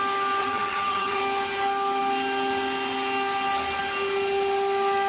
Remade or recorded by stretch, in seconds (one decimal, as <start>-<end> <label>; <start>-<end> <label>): 0.0-0.4 recorded; 0.4-1.2 remade; 1.2-5.1 recorded